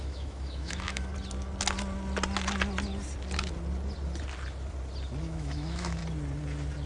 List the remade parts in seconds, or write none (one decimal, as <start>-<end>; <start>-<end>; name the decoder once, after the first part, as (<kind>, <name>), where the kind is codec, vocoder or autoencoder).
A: 0.0-1.1 (autoencoder, DAC-VAE); 5.2-6.0